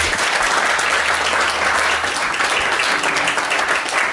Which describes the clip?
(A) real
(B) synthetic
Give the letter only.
A